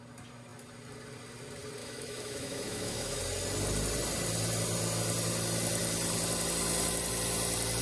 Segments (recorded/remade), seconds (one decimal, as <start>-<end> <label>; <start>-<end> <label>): 0.0-1.8 recorded; 1.8-3.2 remade; 3.2-7.8 recorded